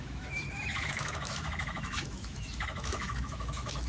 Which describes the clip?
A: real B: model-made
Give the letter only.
B